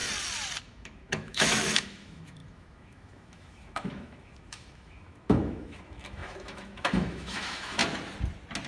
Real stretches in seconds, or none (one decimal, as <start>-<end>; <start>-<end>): 0.0-0.6; 7.8-8.7